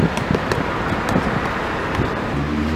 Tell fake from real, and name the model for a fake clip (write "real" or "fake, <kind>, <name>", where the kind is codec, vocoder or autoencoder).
real